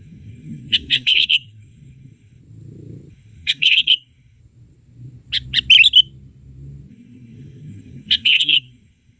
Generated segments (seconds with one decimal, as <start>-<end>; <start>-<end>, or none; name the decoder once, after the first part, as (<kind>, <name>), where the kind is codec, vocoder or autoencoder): 0.0-2.4 (codec, SNAC); 3.1-4.4; 6.9-9.2

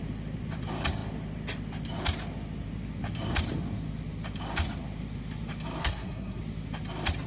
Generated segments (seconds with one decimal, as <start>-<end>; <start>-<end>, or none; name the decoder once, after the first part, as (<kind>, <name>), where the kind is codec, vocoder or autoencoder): 5.8-6.4 (codec, SNAC)

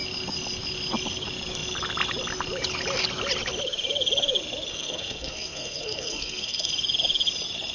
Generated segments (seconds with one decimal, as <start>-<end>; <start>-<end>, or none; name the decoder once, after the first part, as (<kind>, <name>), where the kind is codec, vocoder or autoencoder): 4.7-6.7 (codec, SNAC)